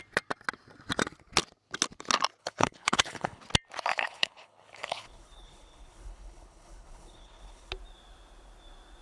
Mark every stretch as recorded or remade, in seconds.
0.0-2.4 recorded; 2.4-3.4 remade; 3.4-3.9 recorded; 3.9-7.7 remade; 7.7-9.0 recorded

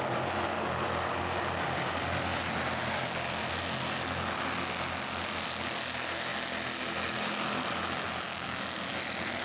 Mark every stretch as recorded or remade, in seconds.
0.0-9.4 recorded

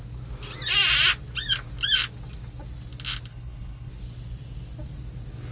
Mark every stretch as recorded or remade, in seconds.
0.0-3.3 recorded; 3.3-3.9 remade; 3.9-5.5 recorded

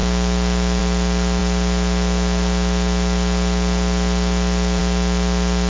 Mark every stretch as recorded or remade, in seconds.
0.0-5.7 recorded

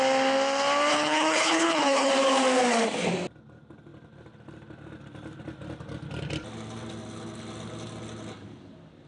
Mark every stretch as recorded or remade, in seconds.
0.0-0.9 recorded; 0.9-2.1 remade; 2.1-9.1 recorded

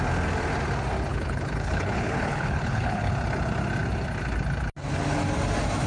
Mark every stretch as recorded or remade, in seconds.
0.0-1.1 recorded; 1.1-3.1 remade; 3.1-5.9 recorded

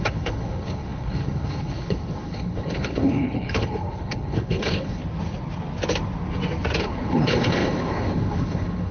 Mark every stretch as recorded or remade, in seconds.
0.0-5.0 remade; 5.0-6.8 recorded; 6.8-8.9 remade